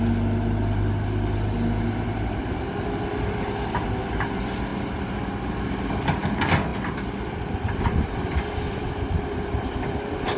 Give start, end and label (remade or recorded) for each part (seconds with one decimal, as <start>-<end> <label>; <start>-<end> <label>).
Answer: 0.0-10.4 recorded